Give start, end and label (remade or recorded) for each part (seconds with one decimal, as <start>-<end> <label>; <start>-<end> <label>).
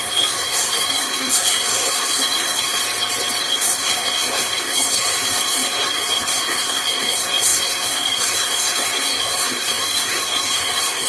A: 0.0-2.8 remade; 2.8-3.4 recorded; 3.4-11.1 remade